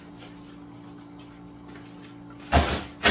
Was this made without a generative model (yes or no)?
yes